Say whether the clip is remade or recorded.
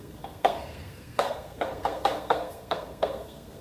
remade